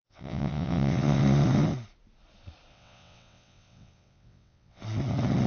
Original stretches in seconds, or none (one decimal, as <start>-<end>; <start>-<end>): 1.2-2.7; 4.8-5.5